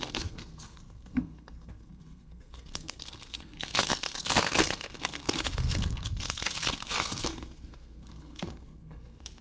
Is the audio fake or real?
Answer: fake